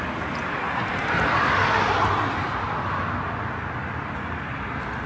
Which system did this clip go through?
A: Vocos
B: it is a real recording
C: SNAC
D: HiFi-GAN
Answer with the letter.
B